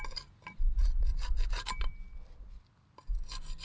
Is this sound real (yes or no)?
yes